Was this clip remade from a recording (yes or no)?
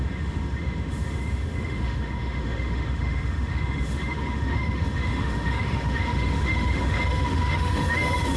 yes